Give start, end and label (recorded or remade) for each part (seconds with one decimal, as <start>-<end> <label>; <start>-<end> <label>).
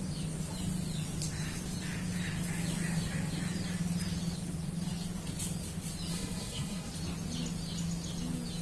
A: 0.0-6.1 recorded; 6.1-6.9 remade; 6.9-8.6 recorded